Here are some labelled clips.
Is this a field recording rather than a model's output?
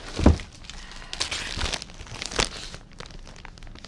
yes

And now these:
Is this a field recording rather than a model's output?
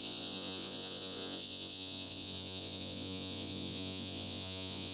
no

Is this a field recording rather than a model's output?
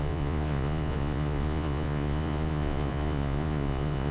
no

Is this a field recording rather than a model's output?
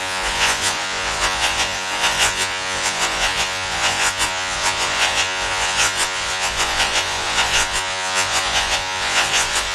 no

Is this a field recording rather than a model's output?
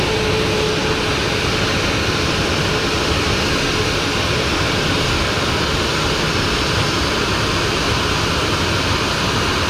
yes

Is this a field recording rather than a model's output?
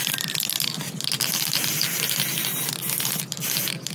yes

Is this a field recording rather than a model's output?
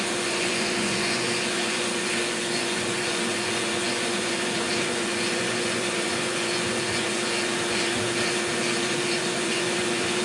no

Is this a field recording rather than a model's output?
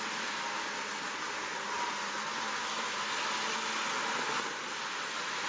yes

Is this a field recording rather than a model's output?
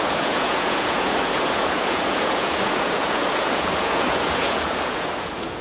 no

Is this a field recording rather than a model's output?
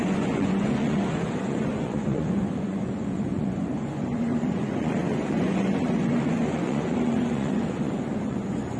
no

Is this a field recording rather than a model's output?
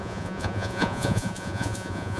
no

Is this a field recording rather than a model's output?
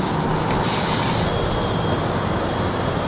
yes